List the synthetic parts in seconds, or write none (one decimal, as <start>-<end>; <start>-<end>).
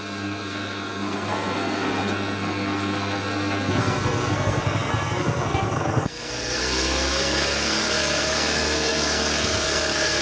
0.0-10.2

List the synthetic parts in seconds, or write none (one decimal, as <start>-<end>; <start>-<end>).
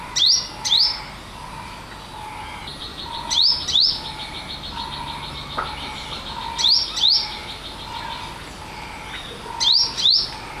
none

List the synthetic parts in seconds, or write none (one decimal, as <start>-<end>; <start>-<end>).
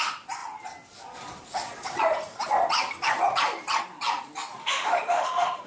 4.6-5.7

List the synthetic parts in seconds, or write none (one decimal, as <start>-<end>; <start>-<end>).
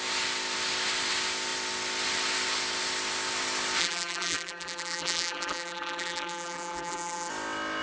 3.8-7.3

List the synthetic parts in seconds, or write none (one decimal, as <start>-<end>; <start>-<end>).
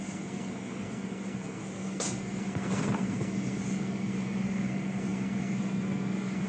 0.0-6.5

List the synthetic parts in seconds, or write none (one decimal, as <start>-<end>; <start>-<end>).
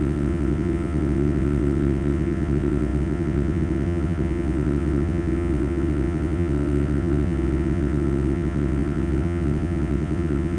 0.0-10.6